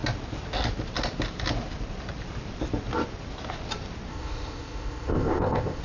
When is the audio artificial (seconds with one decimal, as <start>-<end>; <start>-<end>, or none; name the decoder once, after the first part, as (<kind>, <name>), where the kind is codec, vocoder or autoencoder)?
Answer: 4.1-5.8 (codec, ZipCodec)